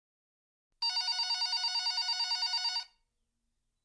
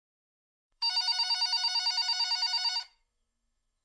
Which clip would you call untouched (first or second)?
first